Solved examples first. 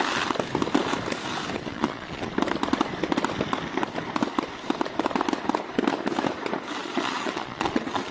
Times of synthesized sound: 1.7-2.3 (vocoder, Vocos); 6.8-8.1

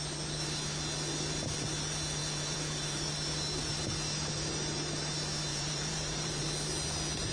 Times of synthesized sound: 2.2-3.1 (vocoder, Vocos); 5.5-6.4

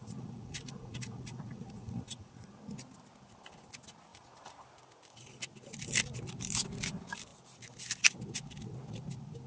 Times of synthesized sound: 0.0-2.5 (vocoder, Vocos); 4.1-4.6